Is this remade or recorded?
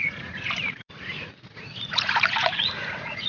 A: remade